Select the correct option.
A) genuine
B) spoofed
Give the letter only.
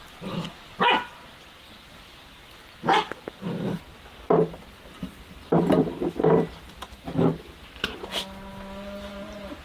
A